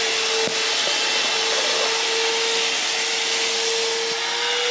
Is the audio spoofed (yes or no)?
no